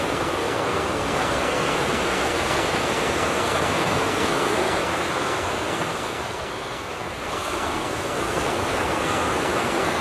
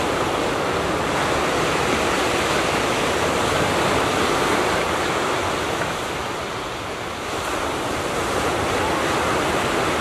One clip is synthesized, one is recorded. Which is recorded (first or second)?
second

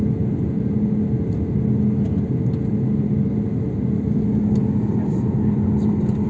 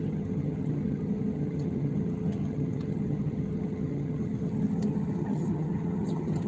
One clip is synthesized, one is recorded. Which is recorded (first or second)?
first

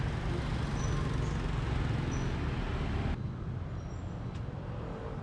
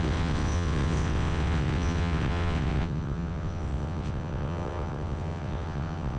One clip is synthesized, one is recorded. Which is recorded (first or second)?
first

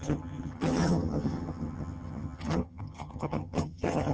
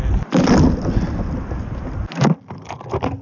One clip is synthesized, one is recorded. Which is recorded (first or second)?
second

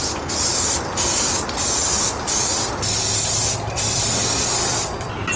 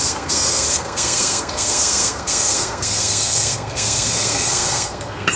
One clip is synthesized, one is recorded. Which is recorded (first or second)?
first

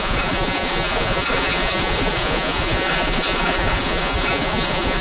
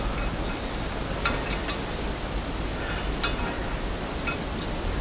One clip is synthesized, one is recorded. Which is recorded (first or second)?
second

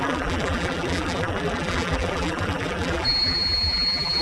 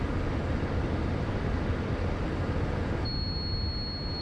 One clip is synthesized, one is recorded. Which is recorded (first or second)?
second